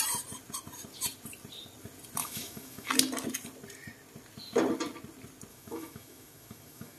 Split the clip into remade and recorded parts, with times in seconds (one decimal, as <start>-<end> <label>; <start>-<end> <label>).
0.0-2.2 recorded; 2.2-2.9 remade; 2.9-5.5 recorded; 5.5-7.0 remade